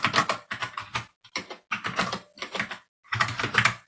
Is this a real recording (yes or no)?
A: yes